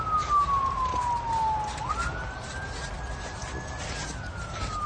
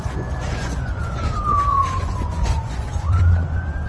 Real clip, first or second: first